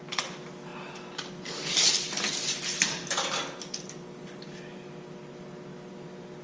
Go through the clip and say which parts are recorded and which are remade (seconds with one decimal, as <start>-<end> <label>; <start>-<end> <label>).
0.0-6.4 recorded